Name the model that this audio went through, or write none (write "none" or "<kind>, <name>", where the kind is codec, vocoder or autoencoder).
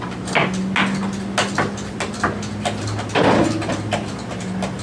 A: none